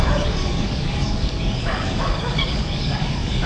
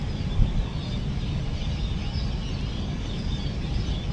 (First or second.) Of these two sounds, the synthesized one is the first